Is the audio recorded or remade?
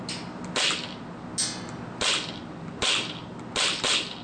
recorded